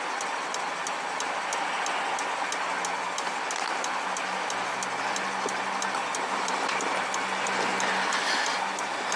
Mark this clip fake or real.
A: real